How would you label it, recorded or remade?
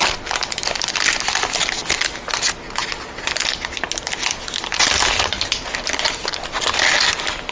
recorded